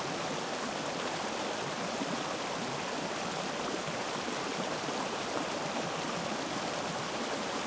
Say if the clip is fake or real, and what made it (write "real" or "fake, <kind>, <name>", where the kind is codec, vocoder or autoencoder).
real